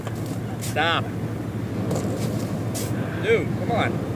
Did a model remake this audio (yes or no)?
no